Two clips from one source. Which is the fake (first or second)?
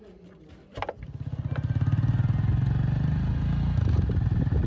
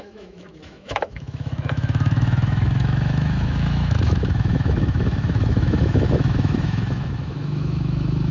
second